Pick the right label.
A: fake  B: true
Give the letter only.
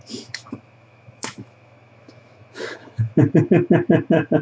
A